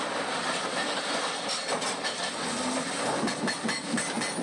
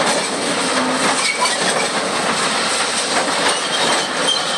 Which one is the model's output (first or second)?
first